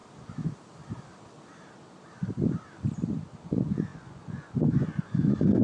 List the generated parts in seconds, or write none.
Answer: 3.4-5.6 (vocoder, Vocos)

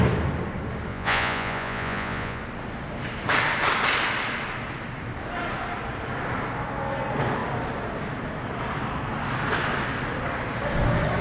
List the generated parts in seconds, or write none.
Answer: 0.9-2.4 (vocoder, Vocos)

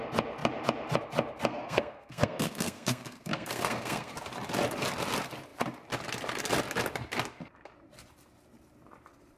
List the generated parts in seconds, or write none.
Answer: 1.5-4.1 (codec, SNAC)